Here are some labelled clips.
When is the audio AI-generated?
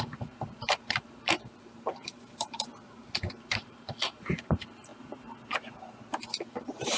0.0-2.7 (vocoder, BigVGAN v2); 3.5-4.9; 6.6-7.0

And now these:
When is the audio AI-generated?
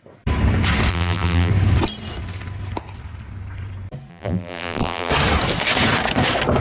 0.9-1.5 (vocoder, BigVGAN v2); 4.1-5.1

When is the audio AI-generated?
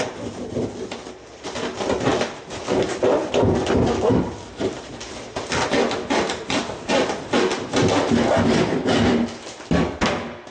2.1-5.7 (vocoder, BigVGAN v2)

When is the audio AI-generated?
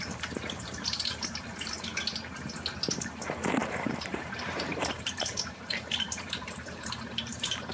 0.0-1.9 (vocoder, BigVGAN v2); 2.8-7.7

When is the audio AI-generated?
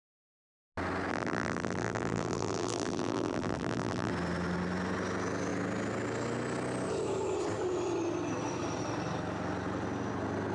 1.1-4.1 (vocoder, BigVGAN v2)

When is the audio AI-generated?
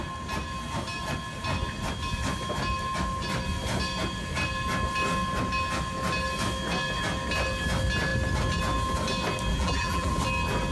9.5-10.1 (vocoder, BigVGAN v2)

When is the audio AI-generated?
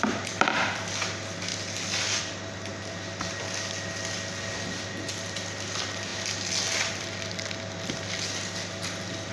0.0-2.7 (vocoder, BigVGAN v2); 4.5-6.1; 6.9-9.3